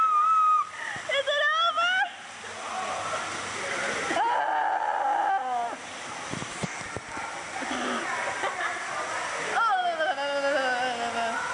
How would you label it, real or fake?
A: real